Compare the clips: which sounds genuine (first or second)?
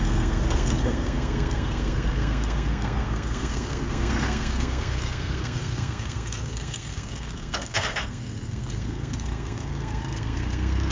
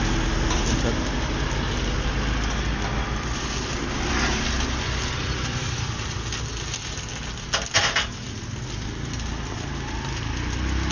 second